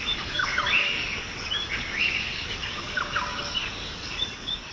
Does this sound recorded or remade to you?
remade